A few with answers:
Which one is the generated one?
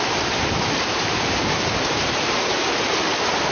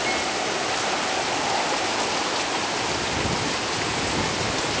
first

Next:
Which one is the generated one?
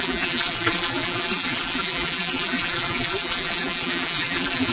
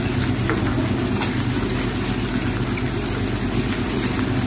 first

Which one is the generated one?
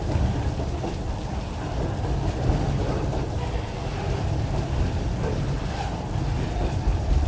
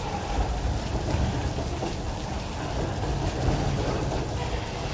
first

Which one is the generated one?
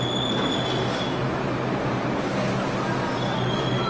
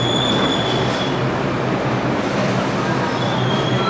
second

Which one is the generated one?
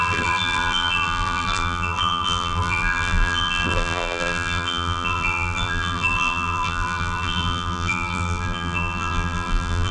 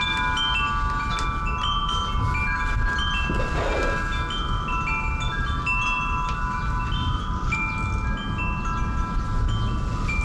first